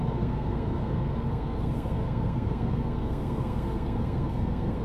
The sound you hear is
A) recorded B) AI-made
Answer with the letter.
B